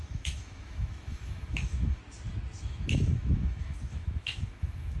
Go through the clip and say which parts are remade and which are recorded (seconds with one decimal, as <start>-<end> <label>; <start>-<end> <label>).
0.0-2.0 remade; 2.0-2.6 recorded; 2.6-5.0 remade